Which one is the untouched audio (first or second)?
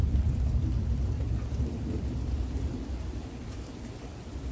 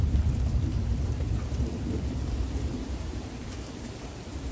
first